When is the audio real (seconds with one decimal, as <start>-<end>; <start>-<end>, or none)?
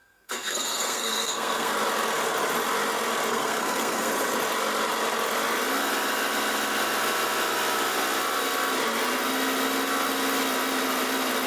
1.7-3.3; 4.1-11.5